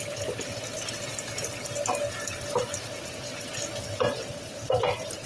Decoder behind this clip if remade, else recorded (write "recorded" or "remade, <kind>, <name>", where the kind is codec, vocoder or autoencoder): recorded